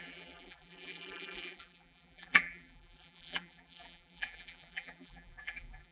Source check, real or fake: fake